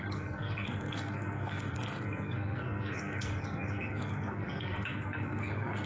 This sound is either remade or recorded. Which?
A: remade